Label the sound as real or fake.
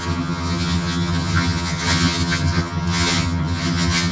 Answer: fake